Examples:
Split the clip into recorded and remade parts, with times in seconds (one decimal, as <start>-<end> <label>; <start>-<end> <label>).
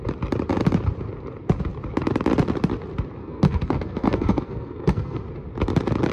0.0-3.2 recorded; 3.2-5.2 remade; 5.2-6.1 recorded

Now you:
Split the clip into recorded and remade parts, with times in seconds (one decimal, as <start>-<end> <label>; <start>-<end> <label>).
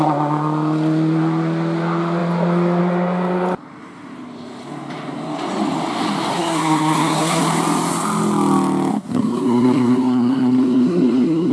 0.0-6.3 recorded; 6.3-7.4 remade; 7.4-8.9 recorded; 8.9-11.5 remade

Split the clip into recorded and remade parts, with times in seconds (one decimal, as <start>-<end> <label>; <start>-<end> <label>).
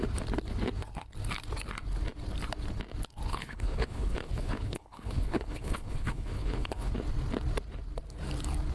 0.0-3.3 recorded; 3.3-6.9 remade; 6.9-8.7 recorded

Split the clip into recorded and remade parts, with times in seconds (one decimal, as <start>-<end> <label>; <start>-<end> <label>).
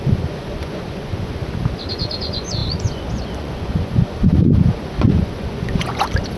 0.0-1.4 remade; 1.4-1.9 recorded; 1.9-6.4 remade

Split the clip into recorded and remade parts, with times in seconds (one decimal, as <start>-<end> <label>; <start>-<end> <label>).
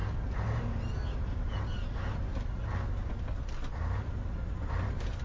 0.0-5.2 recorded